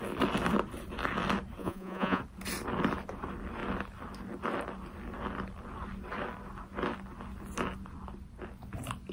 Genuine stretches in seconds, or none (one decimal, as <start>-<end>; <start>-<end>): 0.0-1.6; 2.2-9.1